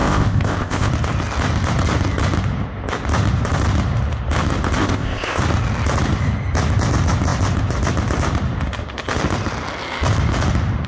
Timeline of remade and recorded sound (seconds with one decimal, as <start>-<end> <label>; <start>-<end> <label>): 0.0-0.9 remade; 0.9-4.8 recorded; 4.8-5.4 remade; 5.4-10.9 recorded